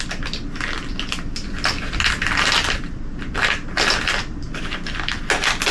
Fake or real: real